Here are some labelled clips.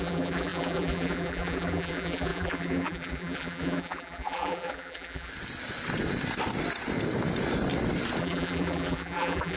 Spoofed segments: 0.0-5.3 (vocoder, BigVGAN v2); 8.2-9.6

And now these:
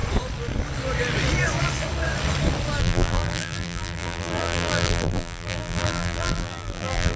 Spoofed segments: 2.8-7.2 (vocoder, BigVGAN v2)

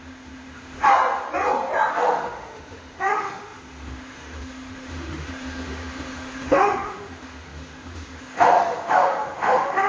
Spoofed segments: 0.0-0.9 (autoencoder, DAC-VAE); 1.9-9.9

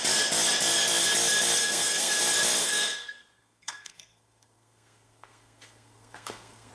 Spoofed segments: 1.6-2.2 (codec, SNAC); 2.6-6.7

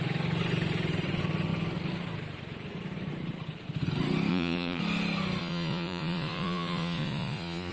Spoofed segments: 4.3-4.8 (vocoder, Vocos); 5.4-7.7